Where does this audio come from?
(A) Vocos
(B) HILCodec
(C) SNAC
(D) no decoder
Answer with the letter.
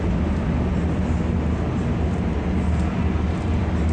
D